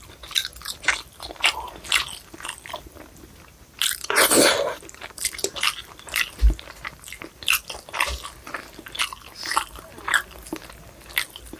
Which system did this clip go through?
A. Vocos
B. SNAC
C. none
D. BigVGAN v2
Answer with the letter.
C